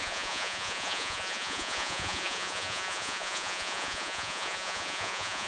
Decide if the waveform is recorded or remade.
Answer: remade